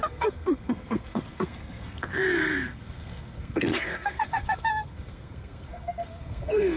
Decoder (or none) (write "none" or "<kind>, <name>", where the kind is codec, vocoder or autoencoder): codec, SNAC